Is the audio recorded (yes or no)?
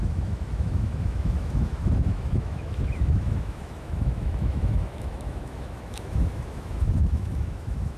no